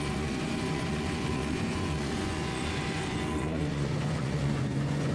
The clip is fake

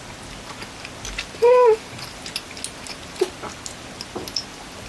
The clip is real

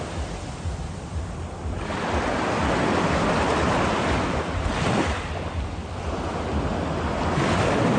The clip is real